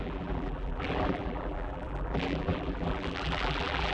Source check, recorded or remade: remade